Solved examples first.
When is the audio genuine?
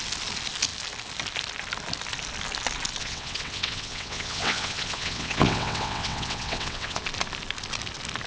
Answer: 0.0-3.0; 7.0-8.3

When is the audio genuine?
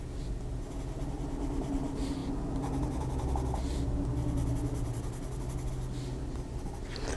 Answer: 0.0-7.2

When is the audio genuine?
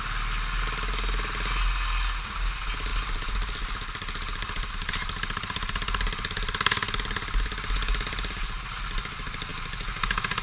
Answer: 0.0-10.4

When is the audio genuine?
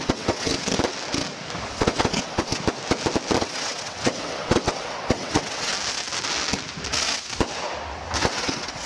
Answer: 0.5-1.7; 2.5-3.4; 5.7-8.2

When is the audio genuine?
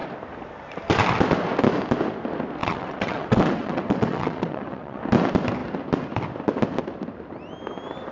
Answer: 0.0-2.6; 5.0-8.1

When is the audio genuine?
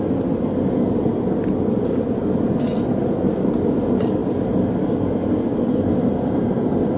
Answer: 0.0-7.0